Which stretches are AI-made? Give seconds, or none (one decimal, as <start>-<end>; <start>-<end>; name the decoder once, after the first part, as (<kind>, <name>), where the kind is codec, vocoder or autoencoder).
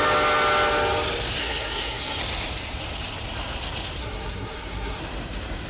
1.4-2.2 (codec, SNAC); 4.0-5.0